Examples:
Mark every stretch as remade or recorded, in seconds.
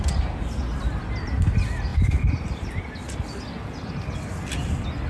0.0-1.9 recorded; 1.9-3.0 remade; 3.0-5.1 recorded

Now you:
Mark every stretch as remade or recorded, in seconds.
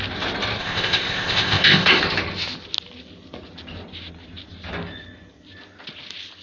0.0-0.6 recorded; 0.6-2.0 remade; 2.0-6.4 recorded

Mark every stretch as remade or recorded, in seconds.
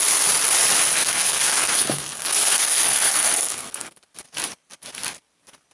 0.0-0.9 recorded; 0.9-4.0 remade; 4.0-5.7 recorded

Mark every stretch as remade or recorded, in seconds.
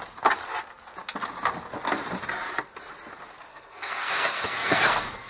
0.0-3.5 recorded; 3.5-5.3 remade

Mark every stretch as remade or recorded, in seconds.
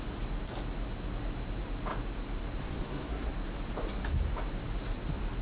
0.0-2.6 recorded; 2.6-3.3 remade; 3.3-5.4 recorded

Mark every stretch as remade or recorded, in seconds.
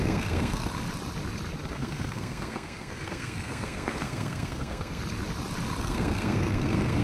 0.0-0.7 remade; 0.7-1.7 recorded; 1.7-5.0 remade; 5.0-5.8 recorded; 5.8-7.0 remade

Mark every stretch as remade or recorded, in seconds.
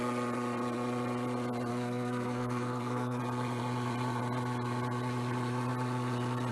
0.0-1.7 recorded; 1.7-3.2 remade; 3.2-6.5 recorded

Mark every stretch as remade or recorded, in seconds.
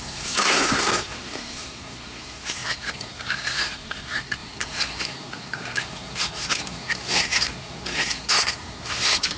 0.0-9.4 remade